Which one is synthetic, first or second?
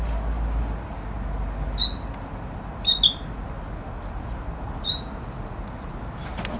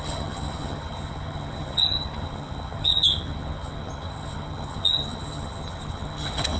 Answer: second